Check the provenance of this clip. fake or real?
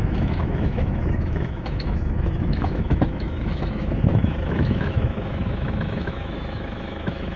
fake